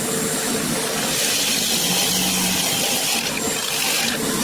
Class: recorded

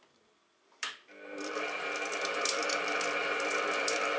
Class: remade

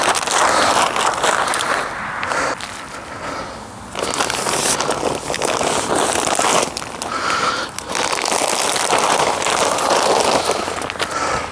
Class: recorded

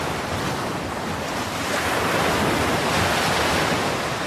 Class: remade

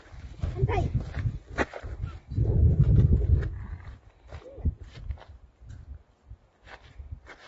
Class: recorded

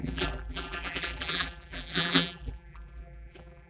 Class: remade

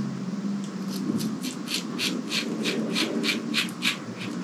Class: recorded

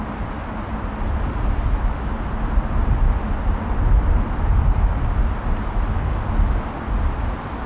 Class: recorded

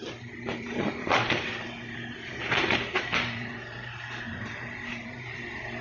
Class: remade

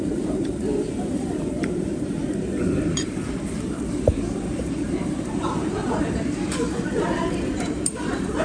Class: remade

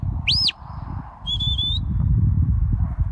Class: recorded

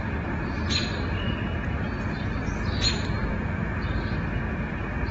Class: recorded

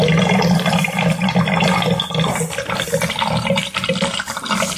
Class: recorded